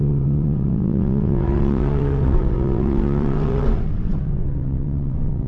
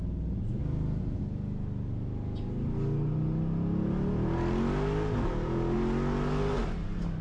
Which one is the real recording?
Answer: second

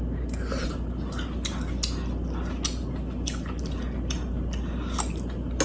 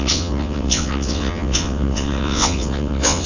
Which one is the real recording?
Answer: first